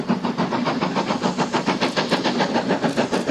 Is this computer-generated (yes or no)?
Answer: no